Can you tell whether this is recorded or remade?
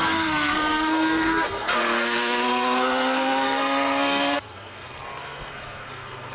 remade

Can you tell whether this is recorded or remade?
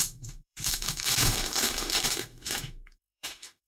remade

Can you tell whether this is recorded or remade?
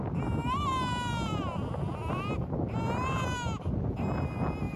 recorded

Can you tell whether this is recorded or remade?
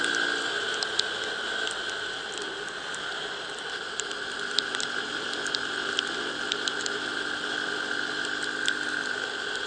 recorded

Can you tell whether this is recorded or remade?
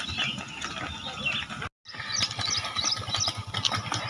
recorded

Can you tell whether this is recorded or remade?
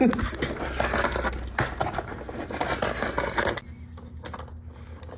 recorded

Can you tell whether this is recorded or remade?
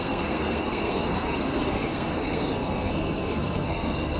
remade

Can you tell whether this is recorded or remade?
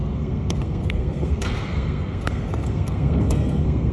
remade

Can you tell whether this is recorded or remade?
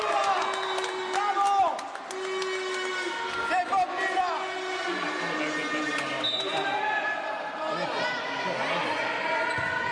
recorded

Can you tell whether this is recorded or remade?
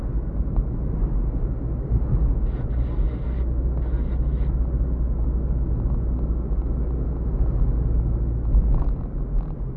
recorded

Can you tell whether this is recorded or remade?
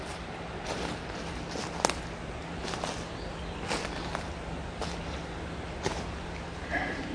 recorded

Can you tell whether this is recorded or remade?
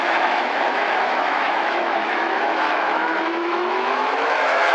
remade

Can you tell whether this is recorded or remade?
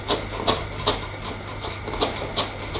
recorded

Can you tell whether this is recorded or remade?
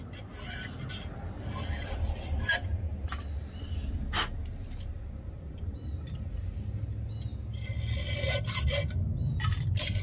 recorded